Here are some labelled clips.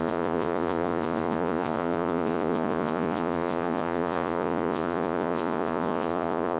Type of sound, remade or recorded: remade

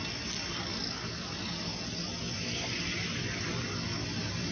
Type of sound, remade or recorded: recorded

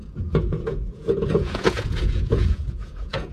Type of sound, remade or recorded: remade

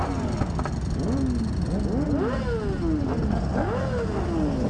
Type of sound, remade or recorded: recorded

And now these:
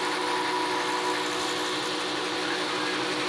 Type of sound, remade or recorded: recorded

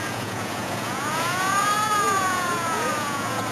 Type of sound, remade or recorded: remade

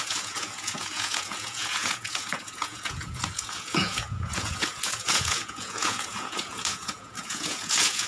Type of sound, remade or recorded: remade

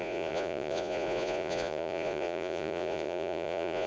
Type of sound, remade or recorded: remade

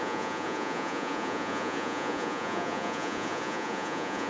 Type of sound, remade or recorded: remade